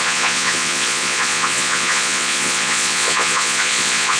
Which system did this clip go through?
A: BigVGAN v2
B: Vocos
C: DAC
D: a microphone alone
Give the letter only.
B